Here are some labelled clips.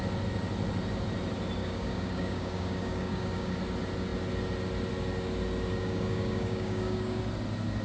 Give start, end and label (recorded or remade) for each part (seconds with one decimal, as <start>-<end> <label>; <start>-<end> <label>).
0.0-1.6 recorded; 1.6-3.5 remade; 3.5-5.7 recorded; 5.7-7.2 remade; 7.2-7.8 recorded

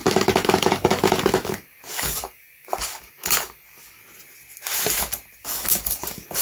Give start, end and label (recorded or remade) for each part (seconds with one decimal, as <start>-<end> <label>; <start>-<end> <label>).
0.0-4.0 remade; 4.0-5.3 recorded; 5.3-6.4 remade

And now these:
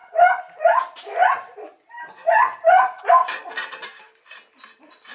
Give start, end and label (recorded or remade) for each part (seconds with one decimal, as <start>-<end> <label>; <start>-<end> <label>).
0.0-5.1 recorded

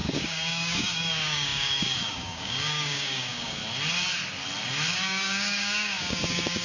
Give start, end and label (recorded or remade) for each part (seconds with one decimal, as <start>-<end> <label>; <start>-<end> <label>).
0.0-3.6 remade; 3.6-4.9 recorded; 4.9-6.6 remade

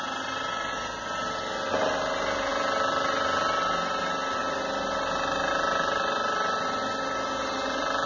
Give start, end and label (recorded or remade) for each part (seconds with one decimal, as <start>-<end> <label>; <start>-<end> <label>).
0.0-8.1 recorded

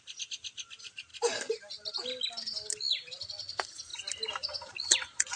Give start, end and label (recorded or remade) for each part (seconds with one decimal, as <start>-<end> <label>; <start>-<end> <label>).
0.0-5.4 recorded